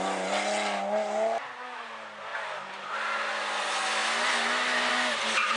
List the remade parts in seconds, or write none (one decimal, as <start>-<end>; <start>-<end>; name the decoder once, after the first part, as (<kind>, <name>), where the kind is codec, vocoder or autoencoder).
none